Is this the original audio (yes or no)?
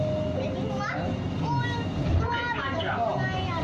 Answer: yes